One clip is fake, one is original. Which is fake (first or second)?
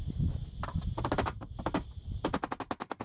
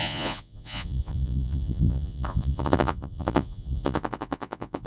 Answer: second